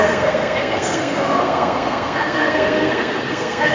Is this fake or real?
fake